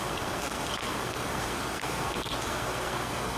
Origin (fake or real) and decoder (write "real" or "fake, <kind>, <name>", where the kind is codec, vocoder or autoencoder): fake, codec, SNAC